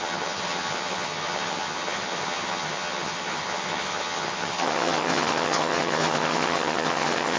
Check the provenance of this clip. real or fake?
fake